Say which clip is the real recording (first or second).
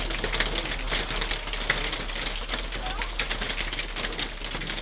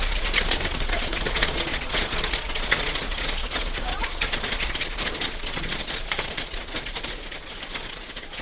first